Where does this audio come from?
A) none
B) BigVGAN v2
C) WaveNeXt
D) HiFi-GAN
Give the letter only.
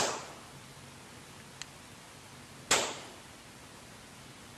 A